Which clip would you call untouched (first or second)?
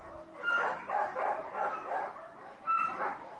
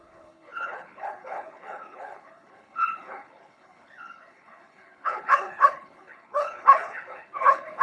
first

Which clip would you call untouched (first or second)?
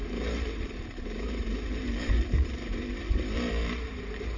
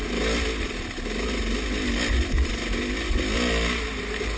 second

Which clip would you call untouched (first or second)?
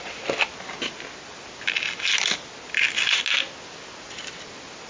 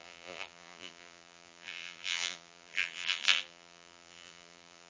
first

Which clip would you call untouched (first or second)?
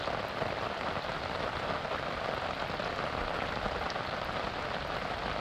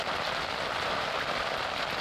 first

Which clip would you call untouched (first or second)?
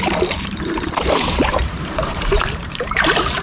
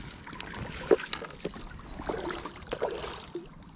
second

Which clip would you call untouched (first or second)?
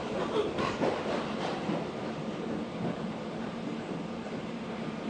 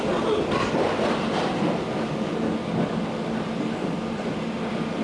second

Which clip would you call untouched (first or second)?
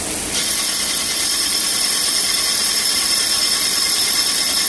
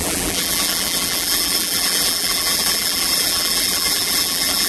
first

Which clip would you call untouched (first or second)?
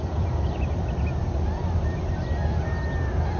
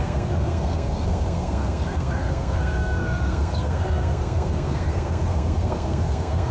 first